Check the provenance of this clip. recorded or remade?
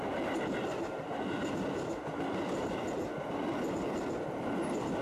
recorded